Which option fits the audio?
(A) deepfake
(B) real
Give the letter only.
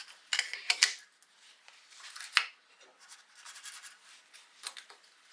B